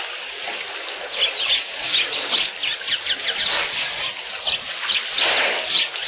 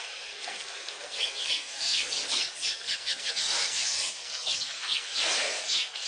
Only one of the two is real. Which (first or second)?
first